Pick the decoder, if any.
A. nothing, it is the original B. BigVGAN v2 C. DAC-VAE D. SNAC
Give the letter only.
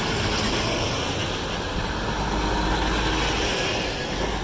A